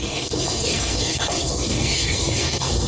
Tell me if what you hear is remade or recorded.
remade